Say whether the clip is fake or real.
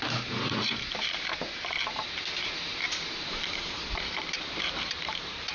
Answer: fake